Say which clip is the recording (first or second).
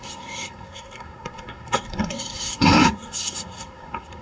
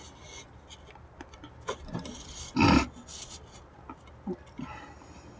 second